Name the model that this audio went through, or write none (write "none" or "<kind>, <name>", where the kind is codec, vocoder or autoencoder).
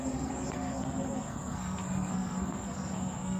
codec, SNAC